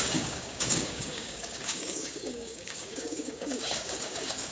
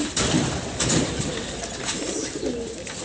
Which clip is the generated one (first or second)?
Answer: first